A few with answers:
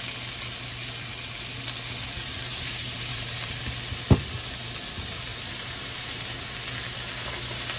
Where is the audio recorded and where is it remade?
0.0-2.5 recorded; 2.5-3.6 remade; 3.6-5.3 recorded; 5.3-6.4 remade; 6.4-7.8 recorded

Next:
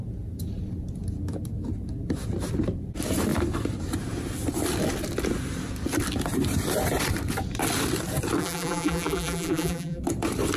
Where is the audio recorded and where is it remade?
0.0-8.4 recorded; 8.4-10.0 remade; 10.0-10.6 recorded

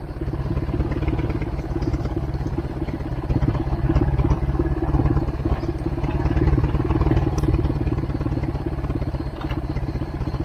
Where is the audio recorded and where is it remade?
0.0-1.4 recorded; 1.4-3.1 remade; 3.1-10.4 recorded